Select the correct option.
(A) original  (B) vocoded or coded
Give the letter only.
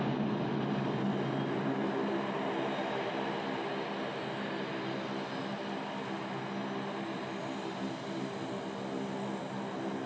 A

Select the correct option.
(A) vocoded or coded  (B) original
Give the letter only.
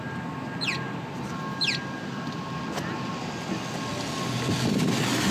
B